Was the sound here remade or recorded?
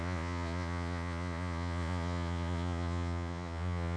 remade